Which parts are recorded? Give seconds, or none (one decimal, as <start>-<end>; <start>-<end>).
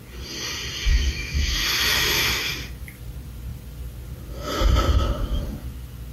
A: 0.0-0.9; 2.5-6.1